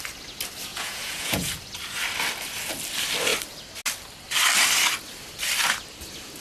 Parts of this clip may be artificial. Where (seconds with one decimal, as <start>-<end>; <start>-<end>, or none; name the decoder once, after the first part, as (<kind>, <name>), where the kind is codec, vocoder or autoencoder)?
0.7-1.5 (vocoder, Vocos)

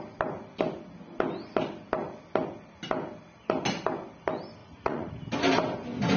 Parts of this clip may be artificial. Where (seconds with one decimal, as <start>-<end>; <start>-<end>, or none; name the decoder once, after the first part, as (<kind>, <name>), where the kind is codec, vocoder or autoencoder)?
4.6-5.1 (vocoder, Vocos)

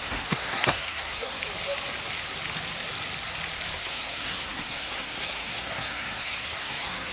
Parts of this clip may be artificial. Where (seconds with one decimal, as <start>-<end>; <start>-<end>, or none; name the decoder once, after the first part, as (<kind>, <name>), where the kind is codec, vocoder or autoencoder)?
0.0-1.4 (codec, SNAC); 3.8-7.1